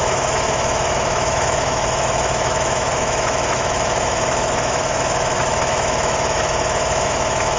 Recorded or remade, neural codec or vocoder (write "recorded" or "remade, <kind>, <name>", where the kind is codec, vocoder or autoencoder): remade, autoencoder, DAC-VAE